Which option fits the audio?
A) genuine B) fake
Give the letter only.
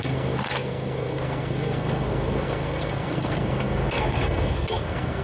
B